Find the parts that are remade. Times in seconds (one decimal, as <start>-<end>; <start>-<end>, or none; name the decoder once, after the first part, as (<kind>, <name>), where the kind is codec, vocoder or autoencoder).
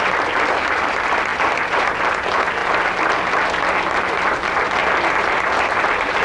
0.0-2.6 (vocoder, BigVGAN v2); 4.0-4.8; 5.5-6.2